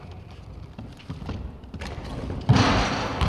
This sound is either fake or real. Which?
real